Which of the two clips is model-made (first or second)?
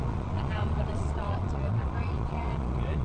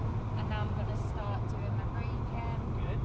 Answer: first